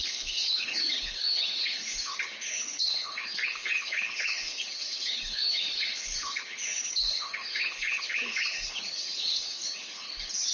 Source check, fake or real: fake